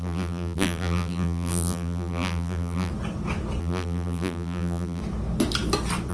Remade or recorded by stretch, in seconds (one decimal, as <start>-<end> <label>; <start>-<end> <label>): 0.0-2.9 remade; 2.9-3.6 recorded; 3.6-5.0 remade; 5.0-6.1 recorded